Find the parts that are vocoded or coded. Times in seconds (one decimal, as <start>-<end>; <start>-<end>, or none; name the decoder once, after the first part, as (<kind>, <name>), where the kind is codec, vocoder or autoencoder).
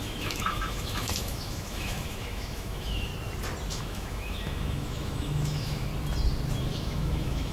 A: 0.0-3.1 (autoencoder, DAC-VAE); 3.7-5.9; 6.6-7.5